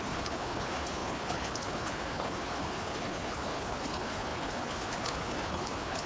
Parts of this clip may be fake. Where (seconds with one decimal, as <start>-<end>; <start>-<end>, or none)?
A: 0.0-6.1